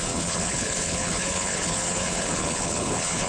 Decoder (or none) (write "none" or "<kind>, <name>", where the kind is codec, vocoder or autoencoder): codec, HILCodec